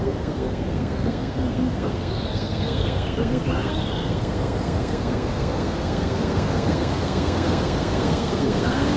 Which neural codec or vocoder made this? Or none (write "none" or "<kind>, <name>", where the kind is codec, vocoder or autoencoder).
codec, SNAC